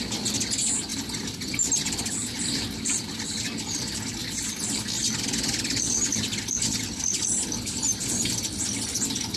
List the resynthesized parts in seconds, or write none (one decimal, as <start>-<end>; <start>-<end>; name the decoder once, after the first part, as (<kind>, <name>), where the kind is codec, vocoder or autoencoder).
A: none